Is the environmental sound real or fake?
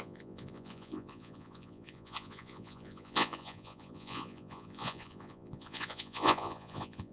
fake